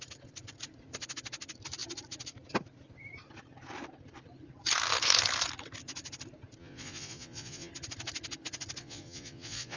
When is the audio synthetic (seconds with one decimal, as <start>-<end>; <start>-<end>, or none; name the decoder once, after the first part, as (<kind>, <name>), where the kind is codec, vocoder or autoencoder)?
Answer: 6.6-7.7 (vocoder, Vocos); 8.8-9.8